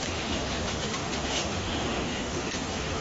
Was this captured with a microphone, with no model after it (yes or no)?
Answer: no